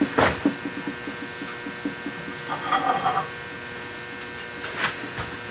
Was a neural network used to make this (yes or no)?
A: no